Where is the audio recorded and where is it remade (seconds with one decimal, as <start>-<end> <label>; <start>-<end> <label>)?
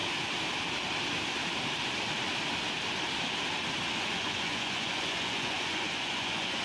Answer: 0.0-4.0 recorded; 4.0-6.6 remade